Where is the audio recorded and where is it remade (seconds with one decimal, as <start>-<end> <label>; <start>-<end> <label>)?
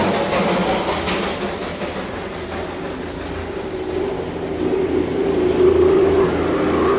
0.0-7.0 recorded